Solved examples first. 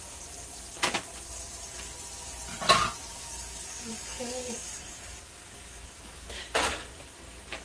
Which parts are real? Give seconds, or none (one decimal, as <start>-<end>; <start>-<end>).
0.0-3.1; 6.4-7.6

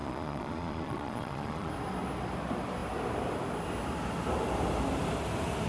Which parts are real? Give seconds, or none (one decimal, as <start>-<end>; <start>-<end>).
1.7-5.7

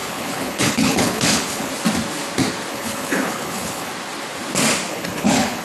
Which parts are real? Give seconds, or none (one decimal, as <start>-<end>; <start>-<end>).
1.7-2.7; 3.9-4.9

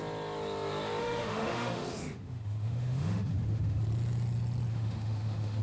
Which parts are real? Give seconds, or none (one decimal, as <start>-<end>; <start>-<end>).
0.0-1.0; 3.8-4.7